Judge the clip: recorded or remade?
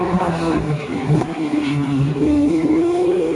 remade